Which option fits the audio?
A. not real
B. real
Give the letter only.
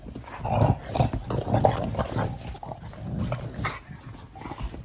B